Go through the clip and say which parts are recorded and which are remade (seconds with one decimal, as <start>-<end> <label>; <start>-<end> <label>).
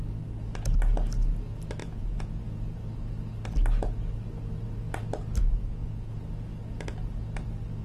0.0-1.8 recorded; 1.8-2.4 remade; 2.4-5.4 recorded; 5.4-6.1 remade; 6.1-7.8 recorded